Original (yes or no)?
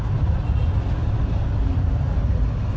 yes